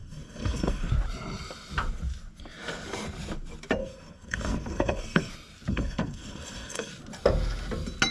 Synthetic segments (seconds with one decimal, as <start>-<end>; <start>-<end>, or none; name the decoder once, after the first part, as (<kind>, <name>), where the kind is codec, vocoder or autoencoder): 0.0-0.9 (codec, SNAC); 3.8-5.3; 5.7-6.9